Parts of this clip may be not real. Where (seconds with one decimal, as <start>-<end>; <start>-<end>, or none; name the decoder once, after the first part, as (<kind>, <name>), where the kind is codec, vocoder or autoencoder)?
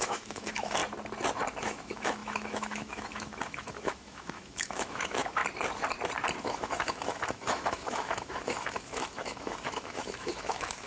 0.0-0.8 (autoencoder, DAC-VAE); 1.6-5.4; 6.4-10.9